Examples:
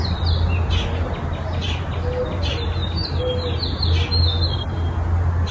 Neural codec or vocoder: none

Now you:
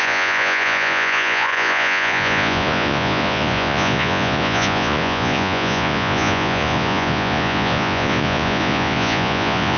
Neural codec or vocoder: vocoder, Vocos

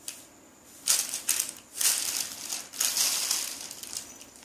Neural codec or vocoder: none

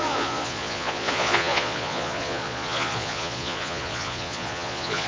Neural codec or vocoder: vocoder, Vocos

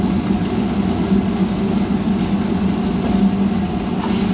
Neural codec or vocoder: none